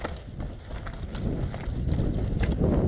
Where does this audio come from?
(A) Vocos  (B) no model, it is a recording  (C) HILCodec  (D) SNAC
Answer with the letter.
B